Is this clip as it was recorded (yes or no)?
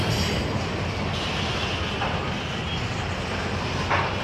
yes